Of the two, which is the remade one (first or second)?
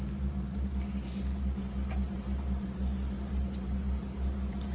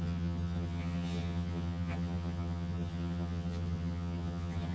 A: second